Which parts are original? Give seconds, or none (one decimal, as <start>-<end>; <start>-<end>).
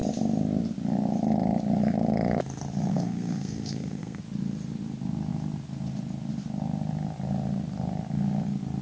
0.0-2.9; 4.2-8.8